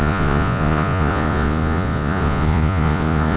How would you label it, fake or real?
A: fake